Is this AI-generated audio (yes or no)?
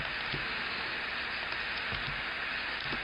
no